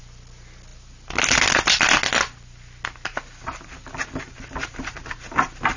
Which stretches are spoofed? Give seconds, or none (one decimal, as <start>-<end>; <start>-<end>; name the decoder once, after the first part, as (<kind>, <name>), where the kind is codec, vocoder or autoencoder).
none